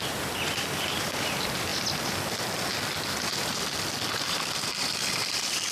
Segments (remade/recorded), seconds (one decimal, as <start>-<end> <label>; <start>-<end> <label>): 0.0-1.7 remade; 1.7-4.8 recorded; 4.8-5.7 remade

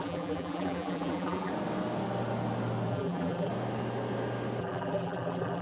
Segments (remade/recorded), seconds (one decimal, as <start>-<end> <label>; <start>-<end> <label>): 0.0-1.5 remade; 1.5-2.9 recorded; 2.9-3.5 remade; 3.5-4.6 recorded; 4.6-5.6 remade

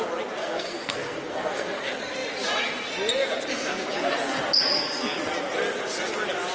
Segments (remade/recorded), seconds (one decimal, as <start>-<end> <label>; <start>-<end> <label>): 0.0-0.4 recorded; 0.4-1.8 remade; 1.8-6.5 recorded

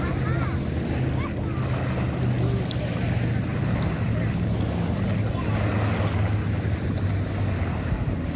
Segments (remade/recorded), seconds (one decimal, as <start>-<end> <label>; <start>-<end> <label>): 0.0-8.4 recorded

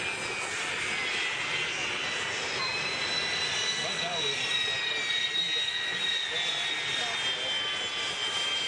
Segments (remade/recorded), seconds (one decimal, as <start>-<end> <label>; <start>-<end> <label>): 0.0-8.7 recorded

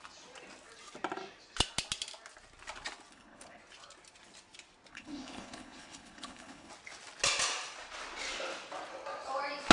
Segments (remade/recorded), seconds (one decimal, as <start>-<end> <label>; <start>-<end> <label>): 0.0-3.1 recorded; 3.1-3.6 remade; 3.6-4.9 recorded; 4.9-6.7 remade; 6.7-9.7 recorded

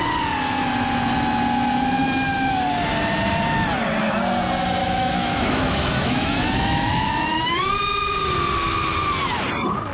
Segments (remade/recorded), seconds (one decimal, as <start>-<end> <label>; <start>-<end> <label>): 0.0-4.8 recorded; 4.8-7.7 remade; 7.7-9.9 recorded